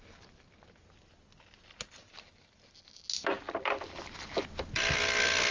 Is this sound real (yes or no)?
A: yes